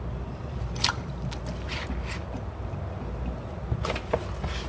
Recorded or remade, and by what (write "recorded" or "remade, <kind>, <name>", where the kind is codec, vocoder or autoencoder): recorded